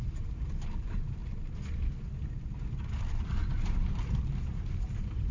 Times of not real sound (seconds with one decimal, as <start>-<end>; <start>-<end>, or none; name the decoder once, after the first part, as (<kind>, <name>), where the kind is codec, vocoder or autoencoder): 0.0-1.2 (vocoder, BigVGAN v2); 3.5-5.3